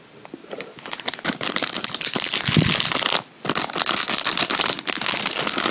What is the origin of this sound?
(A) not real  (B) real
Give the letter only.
B